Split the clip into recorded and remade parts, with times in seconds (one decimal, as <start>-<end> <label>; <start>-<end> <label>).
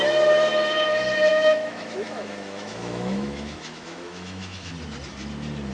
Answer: 0.0-1.3 recorded; 1.3-4.7 remade; 4.7-5.7 recorded